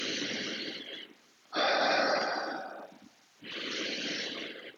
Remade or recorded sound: remade